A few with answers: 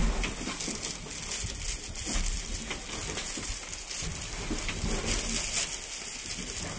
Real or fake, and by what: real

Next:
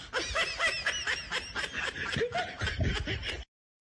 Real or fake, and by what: real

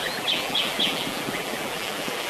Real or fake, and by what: fake, vocoder, BigVGAN v2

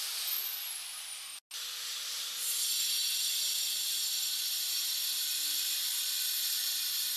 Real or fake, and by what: real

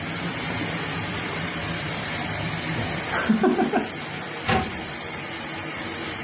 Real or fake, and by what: fake, vocoder, BigVGAN v2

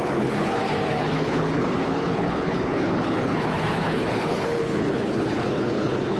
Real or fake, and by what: fake, codec, HILCodec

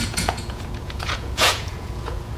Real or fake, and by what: fake, vocoder, Vocos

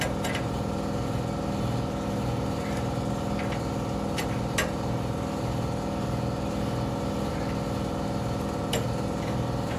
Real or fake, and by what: real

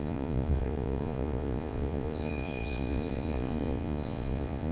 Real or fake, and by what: fake, vocoder, Vocos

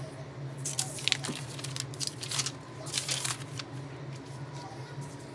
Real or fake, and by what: real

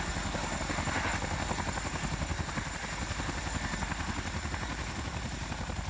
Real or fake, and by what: real